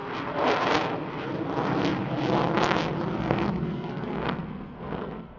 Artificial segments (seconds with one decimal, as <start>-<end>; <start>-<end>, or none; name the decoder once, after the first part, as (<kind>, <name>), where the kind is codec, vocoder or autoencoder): 3.2-5.4 (codec, SNAC)